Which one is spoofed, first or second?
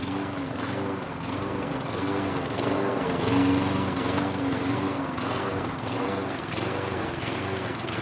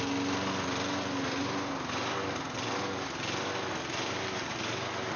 first